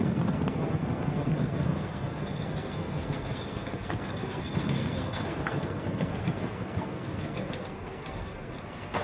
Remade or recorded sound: remade